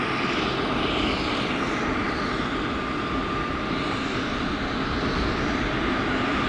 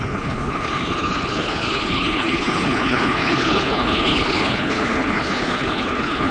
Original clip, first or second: first